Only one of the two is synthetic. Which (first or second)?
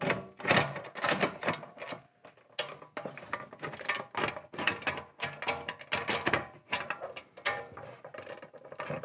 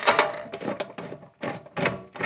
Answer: second